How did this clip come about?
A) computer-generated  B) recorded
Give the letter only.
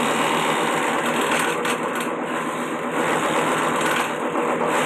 B